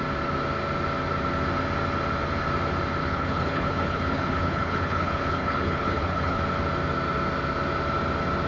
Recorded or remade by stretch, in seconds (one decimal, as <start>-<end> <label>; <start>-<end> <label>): 0.0-3.0 recorded; 3.0-6.4 remade; 6.4-8.5 recorded